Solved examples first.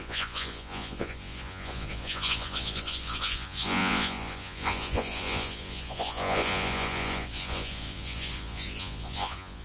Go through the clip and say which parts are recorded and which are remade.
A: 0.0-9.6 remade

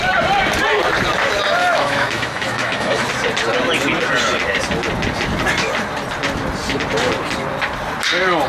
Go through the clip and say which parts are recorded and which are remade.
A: 0.0-1.6 recorded; 1.6-3.1 remade; 3.1-8.5 recorded